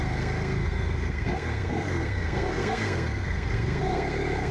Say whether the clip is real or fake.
fake